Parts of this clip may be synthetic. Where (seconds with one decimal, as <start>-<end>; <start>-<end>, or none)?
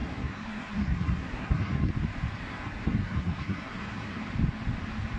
0.0-1.9; 2.4-4.2